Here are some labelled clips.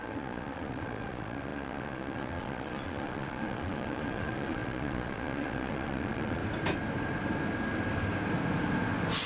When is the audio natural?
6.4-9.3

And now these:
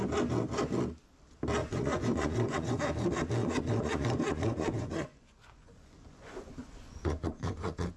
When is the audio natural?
0.0-1.6; 2.8-3.4

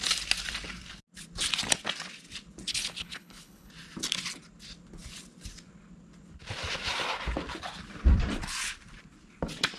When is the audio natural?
0.0-2.7; 3.7-9.8

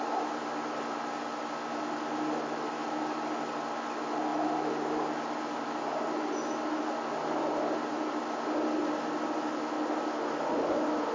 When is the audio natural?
0.0-11.1

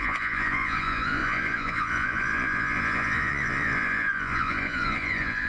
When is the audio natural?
none

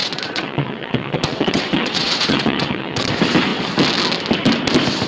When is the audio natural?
3.1-5.1

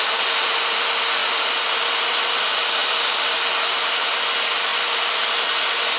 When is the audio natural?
0.0-1.2; 1.8-4.7; 5.4-6.0

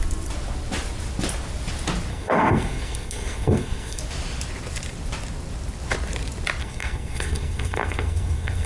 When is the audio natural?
0.0-2.1; 4.0-6.6